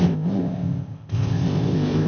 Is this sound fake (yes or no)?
yes